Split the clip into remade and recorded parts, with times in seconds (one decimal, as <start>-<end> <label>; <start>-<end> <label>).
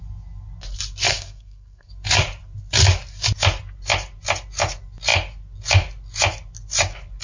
0.0-1.1 recorded; 1.1-1.9 remade; 1.9-7.2 recorded